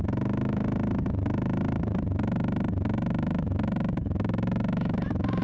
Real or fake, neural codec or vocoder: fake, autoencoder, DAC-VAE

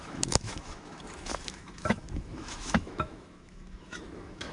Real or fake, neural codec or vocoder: fake, autoencoder, DAC-VAE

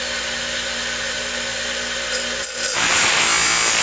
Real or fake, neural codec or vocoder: real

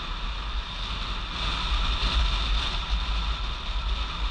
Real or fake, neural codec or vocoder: real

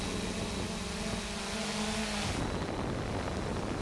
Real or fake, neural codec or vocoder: real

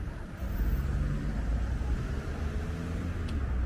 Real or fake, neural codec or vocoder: real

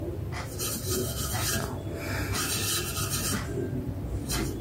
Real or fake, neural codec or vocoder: real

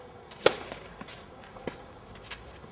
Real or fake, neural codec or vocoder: real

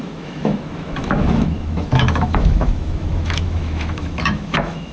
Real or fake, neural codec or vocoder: fake, autoencoder, DAC-VAE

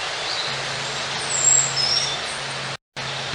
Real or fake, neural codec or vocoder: real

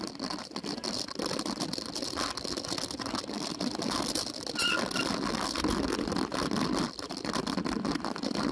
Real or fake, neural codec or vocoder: real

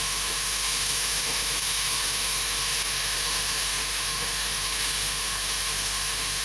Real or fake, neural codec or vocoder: fake, autoencoder, DAC-VAE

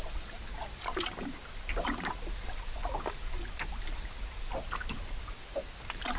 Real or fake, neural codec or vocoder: real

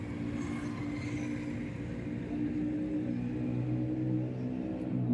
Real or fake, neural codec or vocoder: real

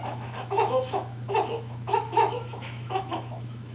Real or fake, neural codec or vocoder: fake, autoencoder, DAC-VAE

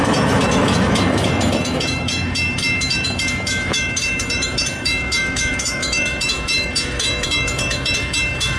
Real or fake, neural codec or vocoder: fake, autoencoder, DAC-VAE